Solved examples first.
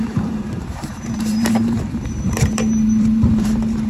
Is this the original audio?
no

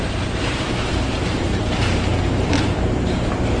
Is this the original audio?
no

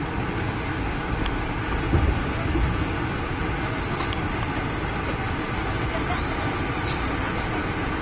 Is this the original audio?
yes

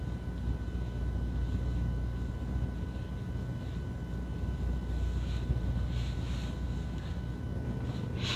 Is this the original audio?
yes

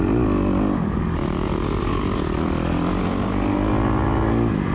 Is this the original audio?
yes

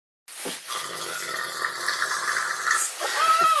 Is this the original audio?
yes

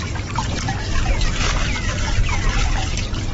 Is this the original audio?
yes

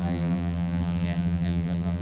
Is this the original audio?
no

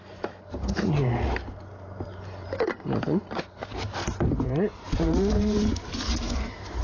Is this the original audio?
no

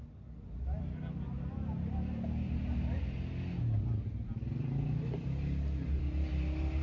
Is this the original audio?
yes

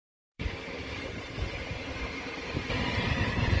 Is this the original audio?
no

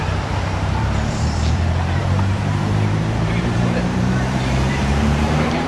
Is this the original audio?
no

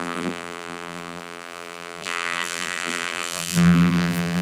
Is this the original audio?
no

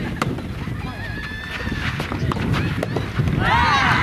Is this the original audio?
yes